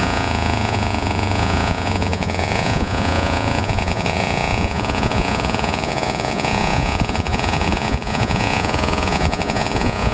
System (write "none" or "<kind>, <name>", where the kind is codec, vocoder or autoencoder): vocoder, Vocos